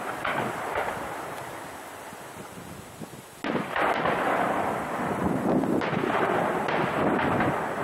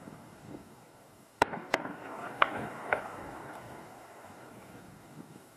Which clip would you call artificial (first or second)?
second